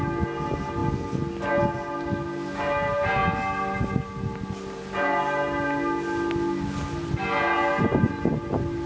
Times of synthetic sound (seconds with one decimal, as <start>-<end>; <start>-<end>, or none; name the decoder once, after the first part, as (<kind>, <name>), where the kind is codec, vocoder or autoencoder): none